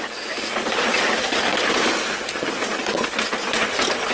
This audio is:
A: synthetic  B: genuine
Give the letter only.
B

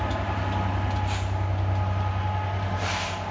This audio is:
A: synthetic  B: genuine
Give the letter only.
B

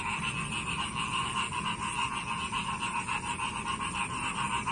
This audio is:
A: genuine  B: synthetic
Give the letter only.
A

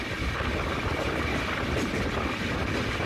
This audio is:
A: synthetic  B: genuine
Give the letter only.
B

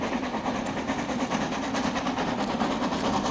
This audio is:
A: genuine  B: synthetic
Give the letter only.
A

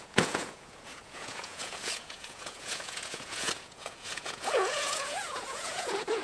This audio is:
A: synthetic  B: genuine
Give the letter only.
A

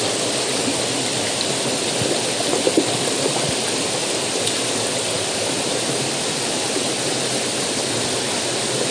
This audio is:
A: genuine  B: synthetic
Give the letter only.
A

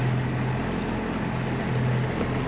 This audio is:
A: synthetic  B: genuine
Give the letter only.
B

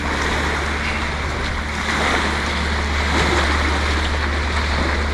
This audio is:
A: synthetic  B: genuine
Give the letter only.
B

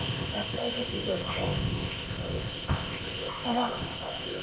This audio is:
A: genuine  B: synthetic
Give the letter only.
B